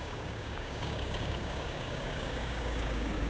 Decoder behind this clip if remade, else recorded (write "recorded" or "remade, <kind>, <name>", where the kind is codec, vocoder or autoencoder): remade, codec, DAC